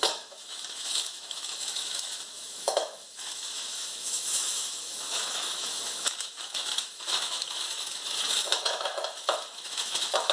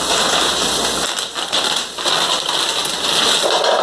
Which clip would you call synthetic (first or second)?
first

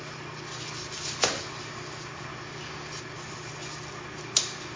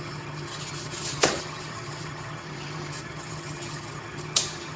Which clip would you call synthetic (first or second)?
second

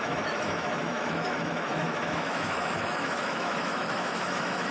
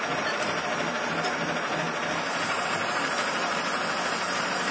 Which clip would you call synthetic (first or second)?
first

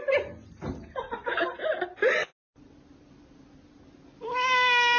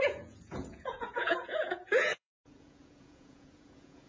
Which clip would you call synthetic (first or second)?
second